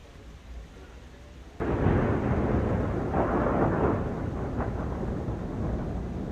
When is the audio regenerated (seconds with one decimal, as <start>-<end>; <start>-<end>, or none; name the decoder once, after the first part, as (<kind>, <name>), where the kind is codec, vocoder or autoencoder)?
none